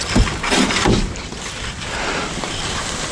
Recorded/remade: recorded